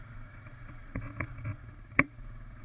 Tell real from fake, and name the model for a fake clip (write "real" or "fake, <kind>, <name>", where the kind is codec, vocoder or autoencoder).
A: fake, vocoder, Vocos